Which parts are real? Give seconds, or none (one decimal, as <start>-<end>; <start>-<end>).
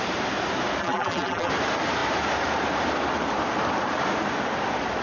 0.0-0.8; 1.5-5.0